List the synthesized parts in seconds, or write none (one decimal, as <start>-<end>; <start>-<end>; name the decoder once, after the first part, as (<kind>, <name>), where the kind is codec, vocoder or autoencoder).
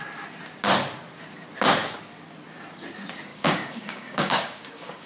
3.3-5.1 (codec, DAC)